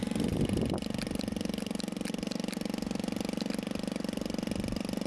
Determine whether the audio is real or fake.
real